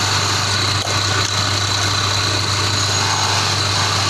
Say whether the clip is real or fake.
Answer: real